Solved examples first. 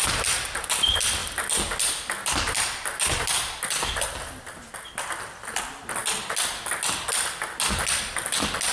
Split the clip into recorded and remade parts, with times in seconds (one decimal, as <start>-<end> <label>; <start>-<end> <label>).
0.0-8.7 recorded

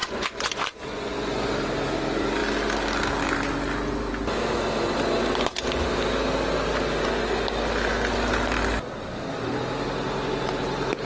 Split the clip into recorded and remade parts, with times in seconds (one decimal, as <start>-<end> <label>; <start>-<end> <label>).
0.0-1.5 remade; 1.5-11.0 recorded

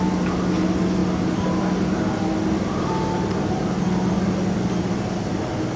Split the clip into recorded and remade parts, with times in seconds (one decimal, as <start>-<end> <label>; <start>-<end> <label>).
0.0-5.8 recorded

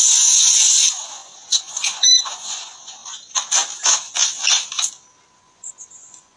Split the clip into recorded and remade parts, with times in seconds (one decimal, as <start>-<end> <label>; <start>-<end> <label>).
0.0-3.0 remade; 3.0-5.3 recorded; 5.3-6.4 remade